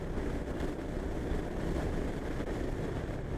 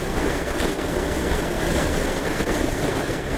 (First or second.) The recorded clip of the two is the first